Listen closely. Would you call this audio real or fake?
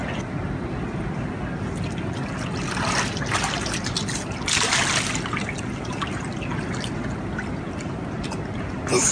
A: real